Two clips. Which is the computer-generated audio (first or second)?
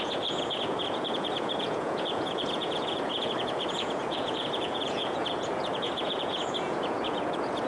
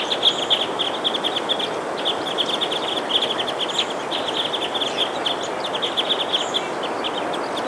first